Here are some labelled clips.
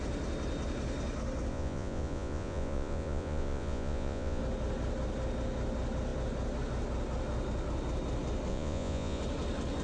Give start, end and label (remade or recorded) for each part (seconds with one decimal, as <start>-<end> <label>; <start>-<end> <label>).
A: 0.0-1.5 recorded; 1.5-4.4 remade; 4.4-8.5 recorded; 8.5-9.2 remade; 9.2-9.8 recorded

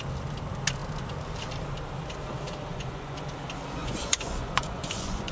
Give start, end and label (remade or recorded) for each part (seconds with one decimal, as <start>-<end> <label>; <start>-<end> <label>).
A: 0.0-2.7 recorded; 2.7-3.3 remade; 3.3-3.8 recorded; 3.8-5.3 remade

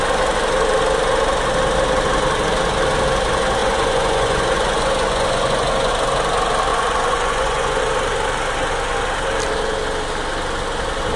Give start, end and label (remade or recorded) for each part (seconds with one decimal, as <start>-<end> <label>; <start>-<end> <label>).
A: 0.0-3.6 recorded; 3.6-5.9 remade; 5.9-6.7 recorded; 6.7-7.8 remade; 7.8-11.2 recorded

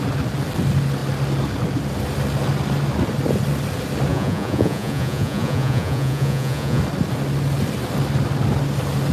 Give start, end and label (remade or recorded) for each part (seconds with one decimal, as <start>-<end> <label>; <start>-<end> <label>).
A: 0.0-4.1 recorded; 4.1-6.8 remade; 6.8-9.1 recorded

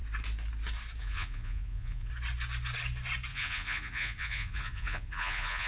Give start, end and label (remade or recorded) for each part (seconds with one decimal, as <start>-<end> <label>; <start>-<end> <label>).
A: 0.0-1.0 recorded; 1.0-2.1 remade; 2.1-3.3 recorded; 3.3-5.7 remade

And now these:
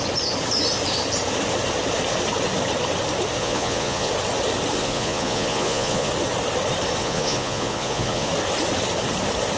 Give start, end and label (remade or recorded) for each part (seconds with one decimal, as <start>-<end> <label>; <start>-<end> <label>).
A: 0.0-3.4 recorded; 3.4-4.1 remade; 4.1-4.8 recorded; 4.8-6.1 remade; 6.1-7.0 recorded; 7.0-8.3 remade; 8.3-9.6 recorded